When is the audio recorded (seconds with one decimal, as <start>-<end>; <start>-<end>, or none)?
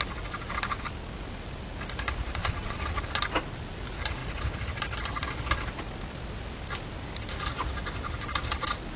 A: 0.0-2.4; 3.0-9.0